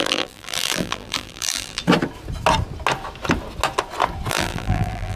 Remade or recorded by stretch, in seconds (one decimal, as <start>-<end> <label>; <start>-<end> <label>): 0.0-1.8 remade; 1.8-4.3 recorded; 4.3-5.2 remade